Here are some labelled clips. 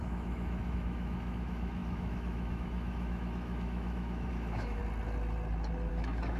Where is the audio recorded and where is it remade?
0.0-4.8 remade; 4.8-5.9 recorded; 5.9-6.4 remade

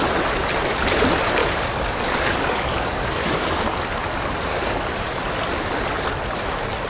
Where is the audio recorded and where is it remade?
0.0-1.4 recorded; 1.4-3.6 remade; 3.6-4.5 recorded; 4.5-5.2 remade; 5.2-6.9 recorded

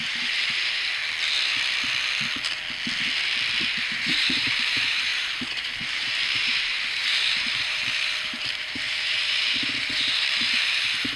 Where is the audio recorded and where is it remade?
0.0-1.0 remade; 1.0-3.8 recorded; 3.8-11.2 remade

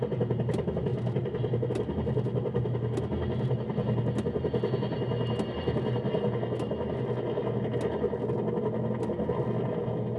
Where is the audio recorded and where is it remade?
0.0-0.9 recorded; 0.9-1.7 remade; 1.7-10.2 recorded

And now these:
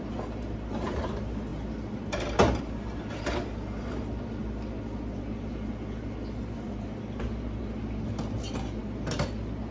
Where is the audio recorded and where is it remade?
0.0-9.7 recorded

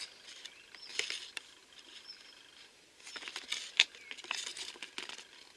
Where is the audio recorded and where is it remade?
0.0-5.6 recorded